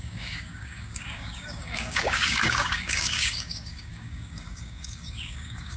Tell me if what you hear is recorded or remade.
remade